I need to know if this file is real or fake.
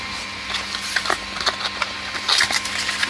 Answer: real